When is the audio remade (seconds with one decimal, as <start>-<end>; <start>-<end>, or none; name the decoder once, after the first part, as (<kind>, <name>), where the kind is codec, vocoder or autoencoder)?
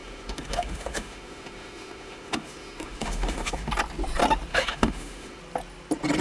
0.0-3.7 (autoencoder, DAC-VAE); 4.5-5.4